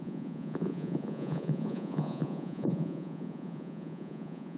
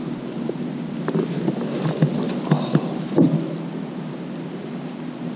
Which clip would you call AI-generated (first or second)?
first